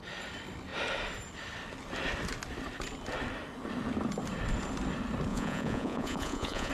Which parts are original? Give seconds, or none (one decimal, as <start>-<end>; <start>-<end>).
0.0-5.3

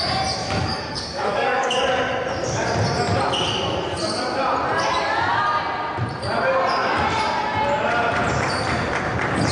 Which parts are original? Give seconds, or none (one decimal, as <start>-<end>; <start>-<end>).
0.0-0.4; 1.8-9.5

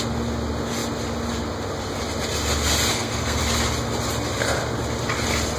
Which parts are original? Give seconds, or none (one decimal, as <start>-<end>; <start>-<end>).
0.0-2.9; 3.4-5.6

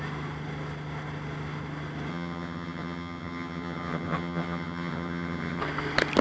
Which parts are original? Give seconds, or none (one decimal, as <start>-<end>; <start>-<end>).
0.0-2.1; 5.6-6.2

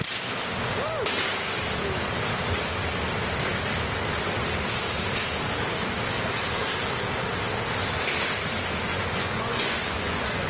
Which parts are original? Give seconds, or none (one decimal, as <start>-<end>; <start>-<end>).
0.0-8.9